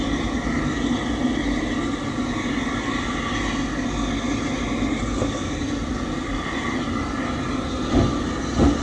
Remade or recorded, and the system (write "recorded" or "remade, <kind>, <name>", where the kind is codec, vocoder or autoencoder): recorded